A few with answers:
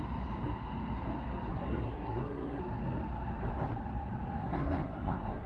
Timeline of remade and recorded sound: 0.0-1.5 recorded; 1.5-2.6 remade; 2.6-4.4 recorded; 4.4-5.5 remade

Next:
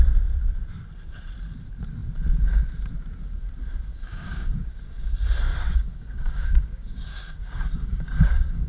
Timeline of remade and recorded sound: 0.0-3.9 recorded; 3.9-5.1 remade; 5.1-5.5 recorded; 5.5-8.7 remade

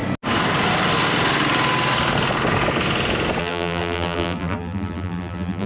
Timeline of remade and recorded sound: 0.0-3.4 recorded; 3.4-5.7 remade